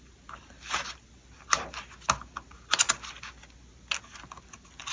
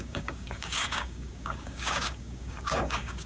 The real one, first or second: first